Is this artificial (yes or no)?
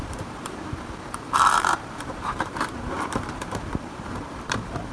yes